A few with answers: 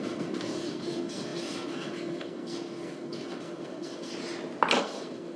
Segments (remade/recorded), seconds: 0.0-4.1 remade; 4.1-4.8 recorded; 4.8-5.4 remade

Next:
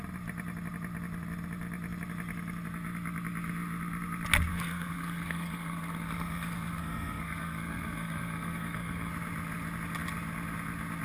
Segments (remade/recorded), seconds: 0.0-4.5 recorded; 4.5-9.1 remade; 9.1-11.0 recorded

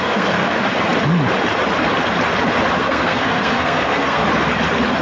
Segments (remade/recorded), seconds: 0.0-0.7 remade; 0.7-2.8 recorded; 2.8-4.2 remade; 4.2-5.0 recorded

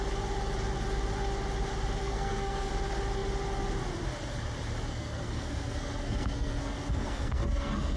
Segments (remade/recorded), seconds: 0.0-2.0 recorded; 2.0-2.7 remade; 2.7-4.9 recorded; 4.9-8.0 remade

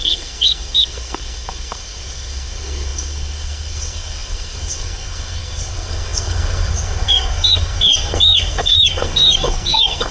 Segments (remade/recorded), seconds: 0.0-10.1 remade

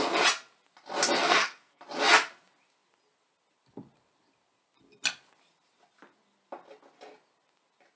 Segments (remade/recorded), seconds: 0.0-1.2 recorded; 1.2-1.8 remade; 1.8-8.0 recorded